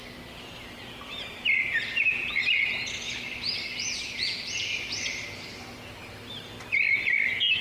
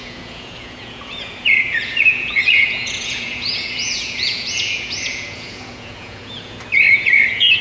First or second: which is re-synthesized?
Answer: second